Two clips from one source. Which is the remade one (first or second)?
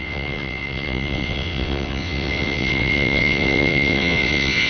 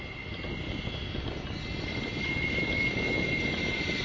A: first